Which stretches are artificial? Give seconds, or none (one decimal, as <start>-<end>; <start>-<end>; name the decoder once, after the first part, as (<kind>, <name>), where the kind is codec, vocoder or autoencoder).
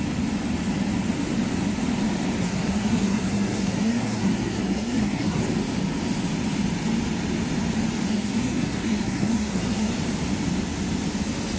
2.4-5.4 (codec, SNAC); 8.1-9.9